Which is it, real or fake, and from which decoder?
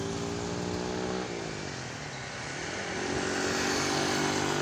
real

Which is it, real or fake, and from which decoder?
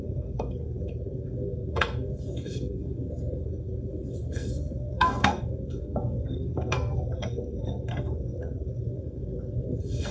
fake, codec, SNAC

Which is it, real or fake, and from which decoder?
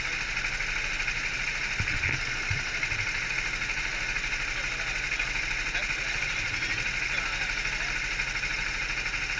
real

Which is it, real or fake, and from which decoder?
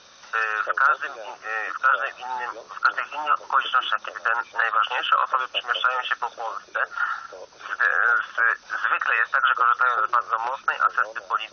real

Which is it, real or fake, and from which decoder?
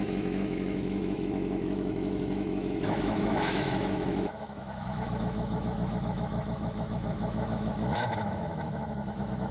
fake, autoencoder, DAC-VAE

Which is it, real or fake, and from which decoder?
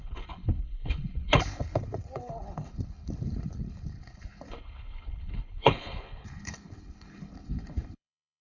fake, codec, HILCodec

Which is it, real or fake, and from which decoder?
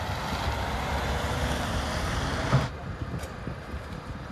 real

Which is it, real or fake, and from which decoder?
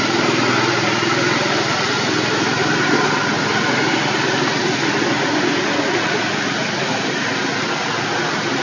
real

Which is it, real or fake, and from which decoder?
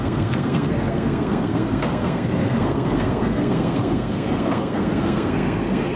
fake, codec, SNAC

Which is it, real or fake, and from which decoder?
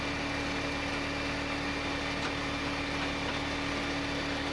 real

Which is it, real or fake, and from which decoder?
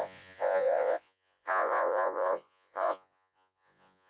fake, vocoder, Vocos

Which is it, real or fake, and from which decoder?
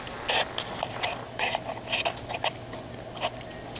real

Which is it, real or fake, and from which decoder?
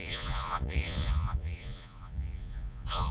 fake, vocoder, Vocos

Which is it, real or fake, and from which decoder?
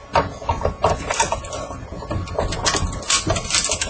real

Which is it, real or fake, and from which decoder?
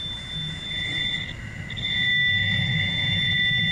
real